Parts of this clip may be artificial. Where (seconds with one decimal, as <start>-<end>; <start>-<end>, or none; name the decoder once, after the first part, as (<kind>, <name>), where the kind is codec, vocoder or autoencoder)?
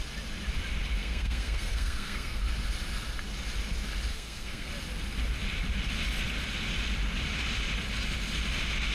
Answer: 1.0-2.4 (codec, SNAC); 4.1-4.7